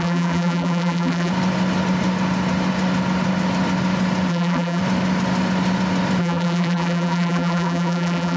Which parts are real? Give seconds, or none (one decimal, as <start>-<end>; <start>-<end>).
1.3-4.3; 4.8-6.2